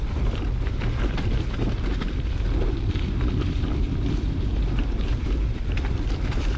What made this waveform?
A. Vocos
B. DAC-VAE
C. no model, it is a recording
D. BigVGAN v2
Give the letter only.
D